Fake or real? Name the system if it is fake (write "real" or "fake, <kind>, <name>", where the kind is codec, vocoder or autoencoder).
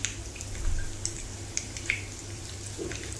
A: fake, vocoder, BigVGAN v2